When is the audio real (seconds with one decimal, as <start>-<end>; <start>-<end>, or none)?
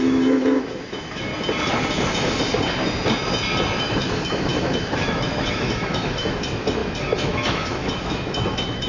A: 1.3-3.8